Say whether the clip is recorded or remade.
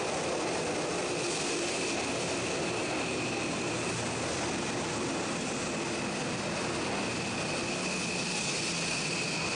recorded